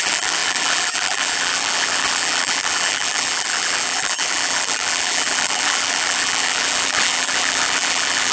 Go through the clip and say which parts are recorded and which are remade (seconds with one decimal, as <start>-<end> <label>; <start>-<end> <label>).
0.0-8.3 remade